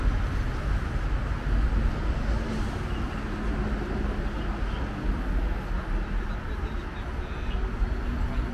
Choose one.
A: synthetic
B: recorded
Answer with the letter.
B